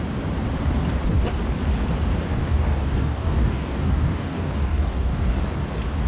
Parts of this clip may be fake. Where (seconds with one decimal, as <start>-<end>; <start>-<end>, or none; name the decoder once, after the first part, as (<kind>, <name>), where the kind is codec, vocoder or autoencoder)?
2.3-5.4 (codec, DAC)